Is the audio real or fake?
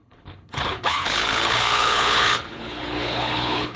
fake